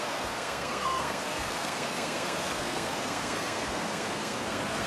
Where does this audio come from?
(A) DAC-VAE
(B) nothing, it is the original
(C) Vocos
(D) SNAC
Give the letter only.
D